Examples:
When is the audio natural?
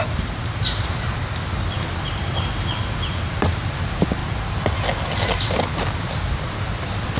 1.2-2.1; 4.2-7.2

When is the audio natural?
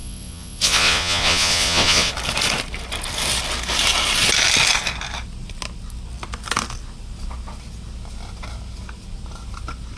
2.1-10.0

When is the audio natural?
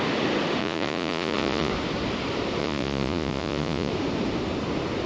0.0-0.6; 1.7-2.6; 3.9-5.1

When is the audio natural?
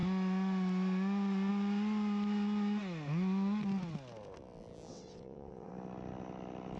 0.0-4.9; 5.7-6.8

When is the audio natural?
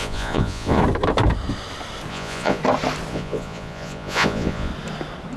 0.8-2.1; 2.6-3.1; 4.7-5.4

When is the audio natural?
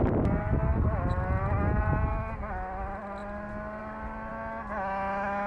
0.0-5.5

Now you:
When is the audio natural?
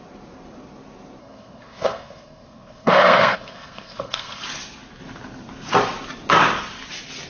0.0-1.2; 4.4-7.3